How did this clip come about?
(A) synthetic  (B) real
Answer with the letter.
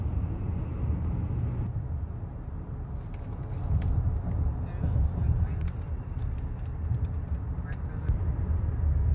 B